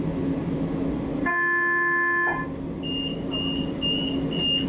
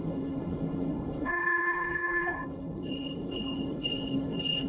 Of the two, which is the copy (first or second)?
second